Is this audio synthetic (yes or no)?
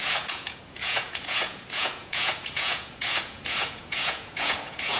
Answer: yes